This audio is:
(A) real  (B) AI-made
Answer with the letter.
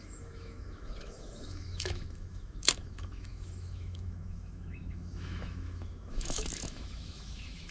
B